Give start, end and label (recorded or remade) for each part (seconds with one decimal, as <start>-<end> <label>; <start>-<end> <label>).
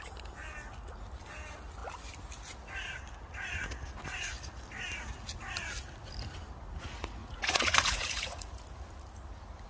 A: 0.0-7.2 recorded; 7.2-8.6 remade; 8.6-9.7 recorded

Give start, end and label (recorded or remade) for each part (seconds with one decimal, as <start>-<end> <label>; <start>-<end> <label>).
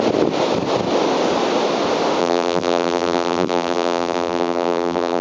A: 0.0-2.2 recorded; 2.2-5.2 remade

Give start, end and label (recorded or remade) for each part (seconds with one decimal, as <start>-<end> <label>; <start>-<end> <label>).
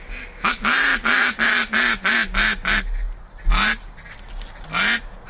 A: 0.0-5.3 recorded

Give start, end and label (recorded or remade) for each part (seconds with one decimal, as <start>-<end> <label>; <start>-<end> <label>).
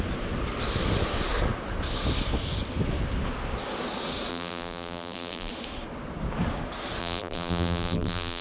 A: 0.0-4.3 recorded; 4.3-5.5 remade; 5.5-7.0 recorded; 7.0-8.4 remade